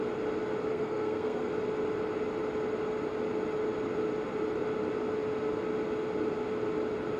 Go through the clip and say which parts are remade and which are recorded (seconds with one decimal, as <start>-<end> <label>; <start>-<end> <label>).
0.0-0.7 recorded; 0.7-1.5 remade; 1.5-7.2 recorded